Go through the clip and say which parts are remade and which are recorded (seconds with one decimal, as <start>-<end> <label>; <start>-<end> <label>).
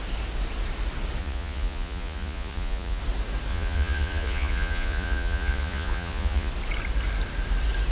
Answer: 0.0-1.2 recorded; 1.2-3.0 remade; 3.0-3.5 recorded; 3.5-6.5 remade; 6.5-7.9 recorded